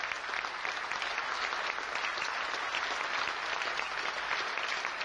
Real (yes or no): yes